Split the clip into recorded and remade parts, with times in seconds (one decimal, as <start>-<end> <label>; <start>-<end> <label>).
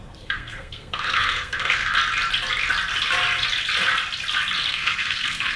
0.0-2.0 remade; 2.0-4.7 recorded; 4.7-5.6 remade